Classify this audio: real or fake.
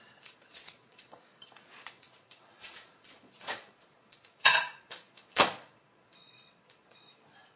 fake